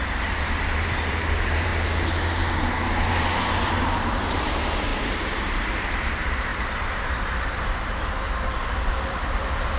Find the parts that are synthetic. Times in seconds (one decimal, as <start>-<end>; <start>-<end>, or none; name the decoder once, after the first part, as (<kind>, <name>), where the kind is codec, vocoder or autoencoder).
0.0-1.7 (vocoder, BigVGAN v2); 3.1-9.8